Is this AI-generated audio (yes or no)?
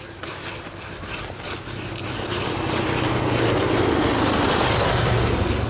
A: no